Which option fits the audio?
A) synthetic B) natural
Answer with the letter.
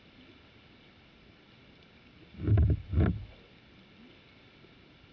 B